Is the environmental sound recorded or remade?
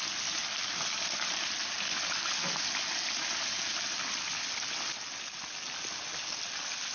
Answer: recorded